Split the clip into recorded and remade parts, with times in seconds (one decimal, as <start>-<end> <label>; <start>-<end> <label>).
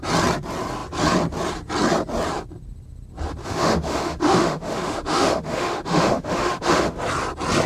0.0-3.4 recorded; 3.4-7.0 remade; 7.0-7.7 recorded